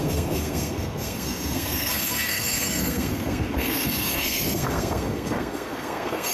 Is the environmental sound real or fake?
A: fake